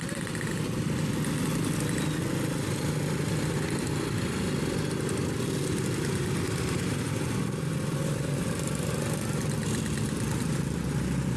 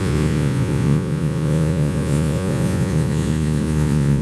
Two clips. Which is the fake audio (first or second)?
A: second